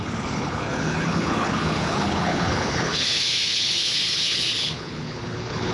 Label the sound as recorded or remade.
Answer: remade